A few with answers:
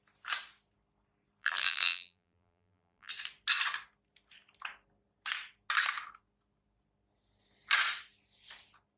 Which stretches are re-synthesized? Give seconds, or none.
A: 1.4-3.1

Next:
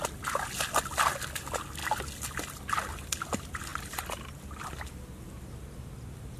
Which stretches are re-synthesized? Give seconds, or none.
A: none